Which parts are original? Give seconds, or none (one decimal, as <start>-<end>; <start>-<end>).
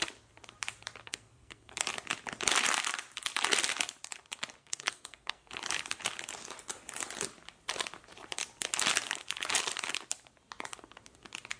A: 0.0-1.0; 1.7-4.6; 5.5-11.6